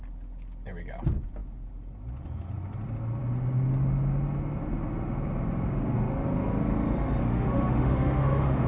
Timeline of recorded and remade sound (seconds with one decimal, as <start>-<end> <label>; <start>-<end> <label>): 0.0-7.2 recorded; 7.2-8.7 remade